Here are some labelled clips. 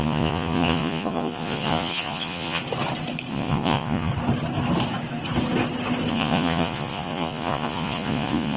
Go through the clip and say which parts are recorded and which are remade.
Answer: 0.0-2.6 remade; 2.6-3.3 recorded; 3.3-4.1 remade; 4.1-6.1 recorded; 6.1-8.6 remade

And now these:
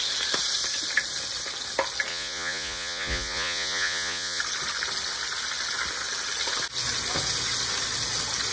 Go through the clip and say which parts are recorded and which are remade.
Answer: 0.0-2.1 recorded; 2.1-4.4 remade; 4.4-8.5 recorded

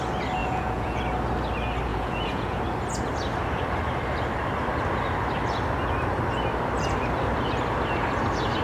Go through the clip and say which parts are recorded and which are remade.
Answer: 0.0-0.4 recorded; 0.4-1.0 remade; 1.0-1.9 recorded; 1.9-2.6 remade; 2.6-8.6 recorded

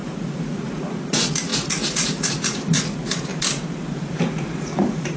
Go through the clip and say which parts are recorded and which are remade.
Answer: 0.0-3.3 remade; 3.3-4.1 recorded; 4.1-5.2 remade

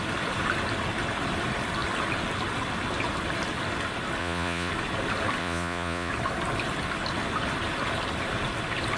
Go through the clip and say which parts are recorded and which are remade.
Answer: 0.0-4.2 recorded; 4.2-4.7 remade; 4.7-5.4 recorded; 5.4-6.1 remade; 6.1-9.0 recorded